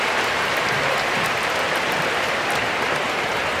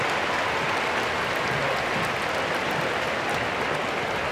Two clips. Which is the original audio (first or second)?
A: second